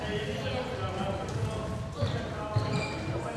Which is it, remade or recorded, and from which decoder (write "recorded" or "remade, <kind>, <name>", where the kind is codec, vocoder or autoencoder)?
recorded